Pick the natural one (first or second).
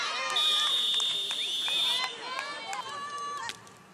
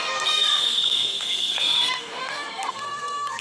first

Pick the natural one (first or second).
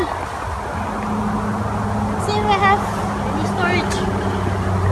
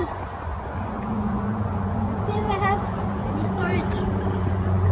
first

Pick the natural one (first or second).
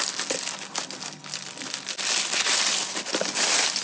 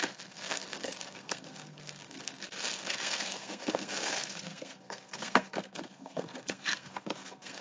first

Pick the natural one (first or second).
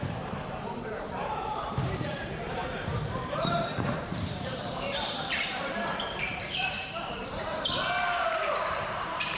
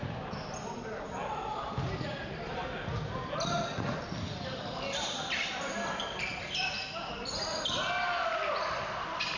second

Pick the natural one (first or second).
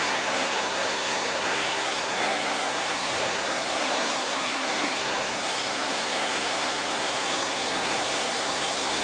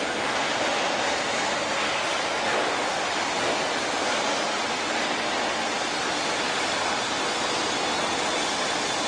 second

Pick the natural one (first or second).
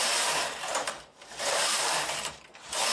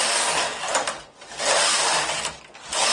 second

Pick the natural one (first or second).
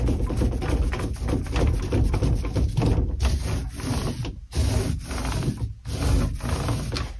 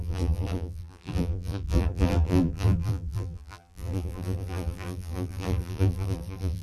first